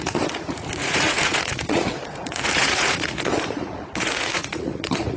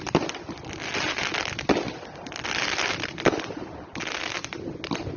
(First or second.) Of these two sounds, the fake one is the first